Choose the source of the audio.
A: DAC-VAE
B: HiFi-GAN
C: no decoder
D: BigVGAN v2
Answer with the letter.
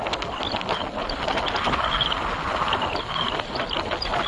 C